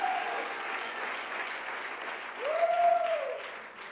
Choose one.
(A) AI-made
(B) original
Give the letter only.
A